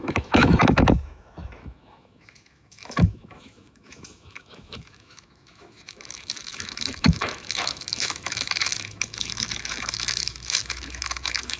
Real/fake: fake